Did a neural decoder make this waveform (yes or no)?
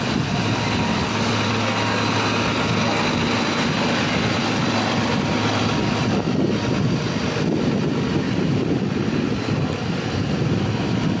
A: no